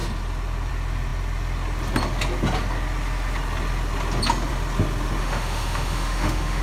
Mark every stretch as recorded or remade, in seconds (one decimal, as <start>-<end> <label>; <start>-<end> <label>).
0.0-5.2 recorded; 5.2-6.6 remade